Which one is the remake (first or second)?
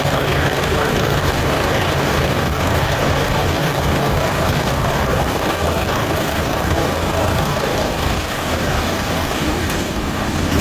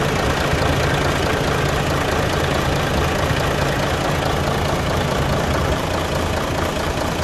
first